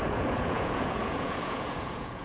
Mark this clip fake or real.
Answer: fake